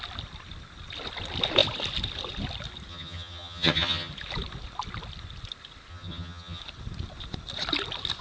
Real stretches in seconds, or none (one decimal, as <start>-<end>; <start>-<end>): 0.0-2.9; 4.1-5.9; 6.6-8.2